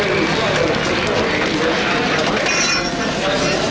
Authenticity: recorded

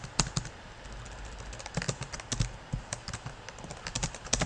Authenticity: recorded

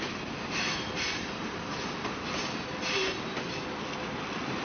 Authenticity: recorded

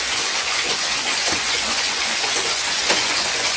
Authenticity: remade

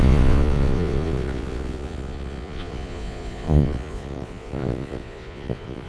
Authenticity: remade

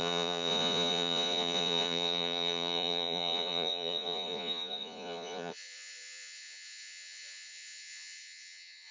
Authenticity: remade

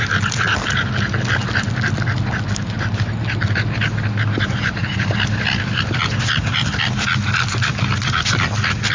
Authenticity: recorded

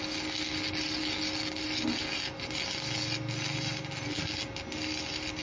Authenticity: recorded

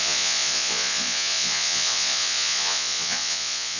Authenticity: remade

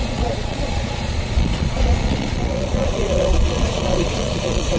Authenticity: remade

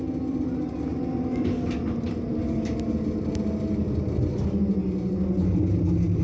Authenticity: recorded